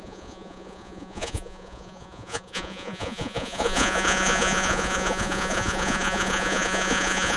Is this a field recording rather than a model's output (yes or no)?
no